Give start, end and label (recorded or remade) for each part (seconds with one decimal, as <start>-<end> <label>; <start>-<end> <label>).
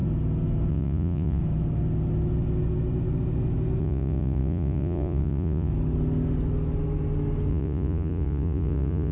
0.0-0.7 recorded; 0.7-1.4 remade; 1.4-3.8 recorded; 3.8-5.7 remade; 5.7-7.5 recorded; 7.5-9.1 remade